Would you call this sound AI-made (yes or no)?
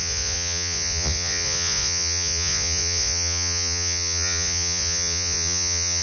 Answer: yes